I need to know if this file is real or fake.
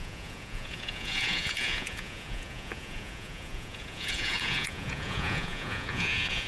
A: fake